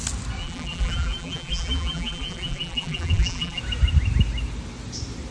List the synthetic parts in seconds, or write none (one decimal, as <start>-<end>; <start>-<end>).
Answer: 0.4-3.6